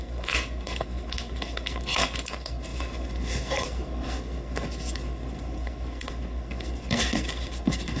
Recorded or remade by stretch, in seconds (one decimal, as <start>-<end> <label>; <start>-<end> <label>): 0.0-8.0 remade